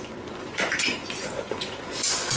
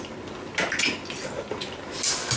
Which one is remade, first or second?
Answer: first